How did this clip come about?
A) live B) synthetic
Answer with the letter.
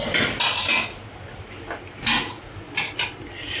A